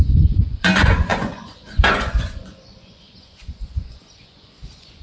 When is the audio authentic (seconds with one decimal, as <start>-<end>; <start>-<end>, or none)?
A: none